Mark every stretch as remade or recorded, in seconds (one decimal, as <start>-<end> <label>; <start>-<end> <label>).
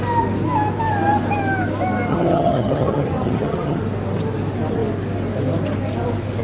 0.0-2.1 recorded; 2.1-3.8 remade; 3.8-6.4 recorded